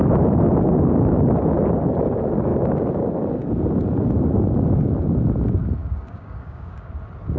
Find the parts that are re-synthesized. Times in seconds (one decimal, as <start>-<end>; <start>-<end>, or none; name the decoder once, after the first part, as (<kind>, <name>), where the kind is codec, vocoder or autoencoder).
2.5-3.1 (codec, DAC); 5.8-6.9